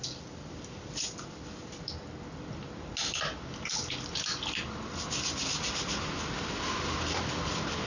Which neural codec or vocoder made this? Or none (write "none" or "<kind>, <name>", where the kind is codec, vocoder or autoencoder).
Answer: none